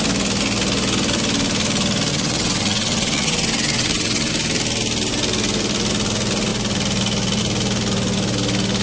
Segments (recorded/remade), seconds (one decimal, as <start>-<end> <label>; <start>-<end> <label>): 0.0-2.1 recorded; 2.1-4.3 remade; 4.3-8.8 recorded